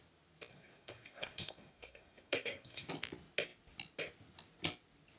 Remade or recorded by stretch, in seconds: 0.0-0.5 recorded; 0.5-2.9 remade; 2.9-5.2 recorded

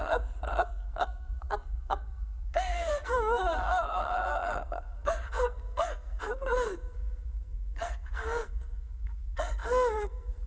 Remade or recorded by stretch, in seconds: 0.0-10.5 remade

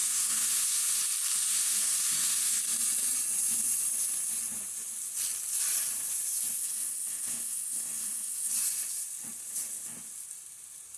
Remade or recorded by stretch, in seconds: 0.0-1.0 remade; 1.0-1.5 recorded; 1.5-2.6 remade; 2.6-6.6 recorded; 6.6-8.5 remade; 8.5-11.0 recorded

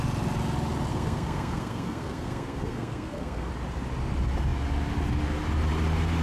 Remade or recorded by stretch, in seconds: 0.0-0.9 recorded; 0.9-3.5 remade; 3.5-6.2 recorded

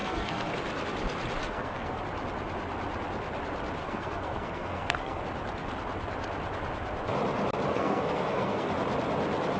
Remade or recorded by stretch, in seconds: 0.0-0.5 remade; 0.5-1.4 recorded; 1.4-2.0 remade; 2.0-3.8 recorded; 3.8-5.2 remade; 5.2-7.7 recorded; 7.7-8.7 remade; 8.7-9.6 recorded